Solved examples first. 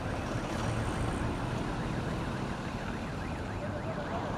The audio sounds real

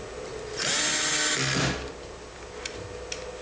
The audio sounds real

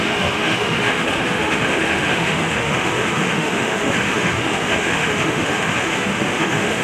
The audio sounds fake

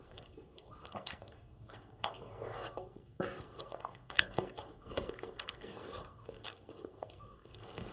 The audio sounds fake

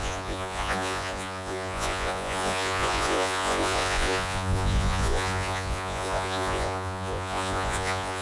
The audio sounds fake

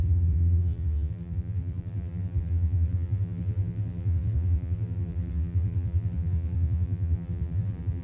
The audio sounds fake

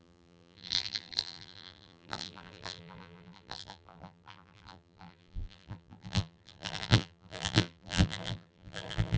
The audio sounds fake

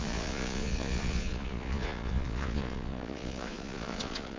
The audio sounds fake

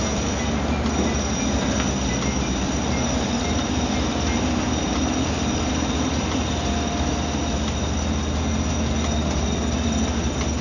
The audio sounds real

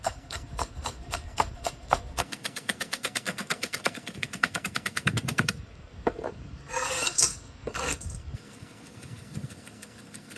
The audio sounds fake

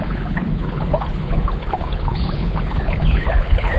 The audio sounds fake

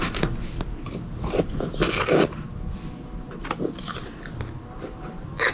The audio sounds real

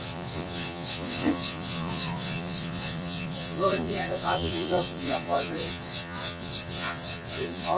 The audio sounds fake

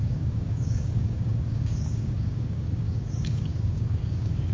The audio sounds fake